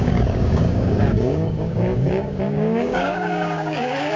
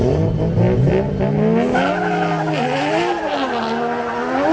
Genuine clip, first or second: second